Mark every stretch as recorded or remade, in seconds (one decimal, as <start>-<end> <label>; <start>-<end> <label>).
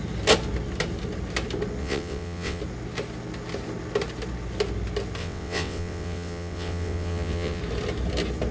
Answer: 0.0-1.8 recorded; 1.8-2.6 remade; 2.6-5.2 recorded; 5.2-7.6 remade; 7.6-8.5 recorded